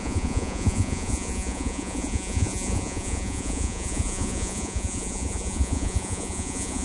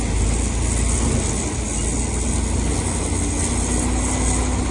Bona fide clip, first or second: second